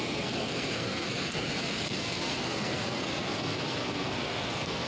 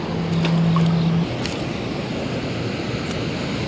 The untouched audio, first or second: second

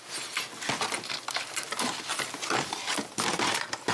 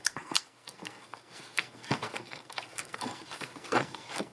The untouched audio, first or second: first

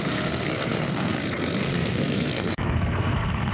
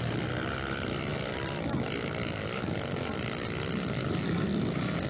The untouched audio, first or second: second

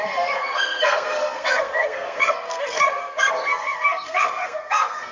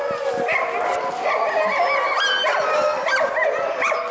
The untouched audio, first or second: second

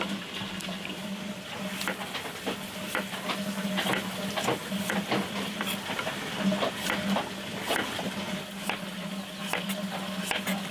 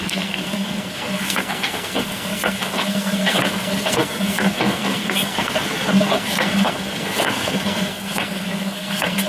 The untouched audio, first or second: first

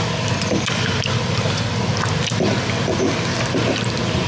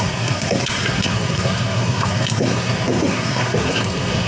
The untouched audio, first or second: first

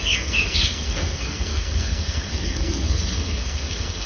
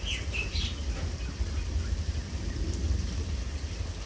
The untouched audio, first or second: second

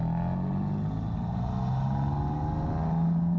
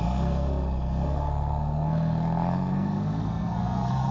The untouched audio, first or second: first